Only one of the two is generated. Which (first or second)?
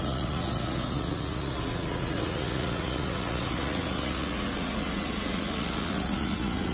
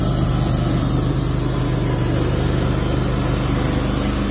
first